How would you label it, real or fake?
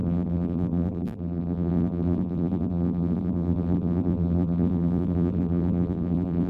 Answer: fake